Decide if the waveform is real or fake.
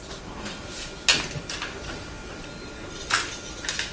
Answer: real